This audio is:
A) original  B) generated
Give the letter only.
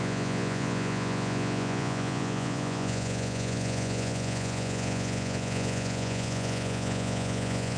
B